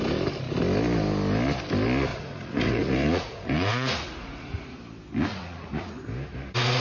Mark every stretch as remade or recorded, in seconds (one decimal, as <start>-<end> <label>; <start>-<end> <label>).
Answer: 0.0-2.1 recorded; 2.1-4.8 remade; 4.8-5.3 recorded; 5.3-5.8 remade; 5.8-6.8 recorded